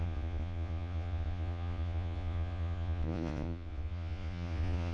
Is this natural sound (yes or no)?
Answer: no